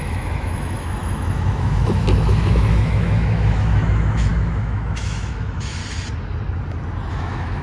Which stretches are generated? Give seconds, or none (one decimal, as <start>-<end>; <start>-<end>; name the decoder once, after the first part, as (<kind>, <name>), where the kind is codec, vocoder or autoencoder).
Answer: 0.0-5.8 (autoencoder, DAC-VAE); 7.1-7.6